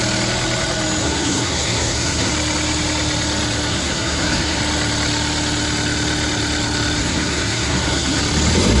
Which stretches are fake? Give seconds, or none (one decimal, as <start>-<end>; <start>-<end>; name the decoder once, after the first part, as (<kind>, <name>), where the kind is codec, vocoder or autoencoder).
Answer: 1.0-2.3 (codec, SNAC); 3.7-4.6; 7.0-8.2